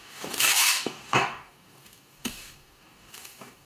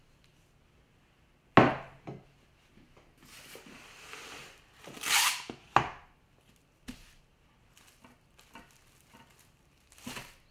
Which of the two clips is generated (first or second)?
first